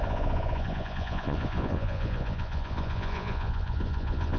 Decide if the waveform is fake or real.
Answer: fake